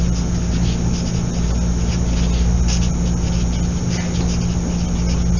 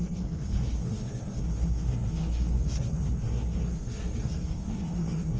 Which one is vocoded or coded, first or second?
second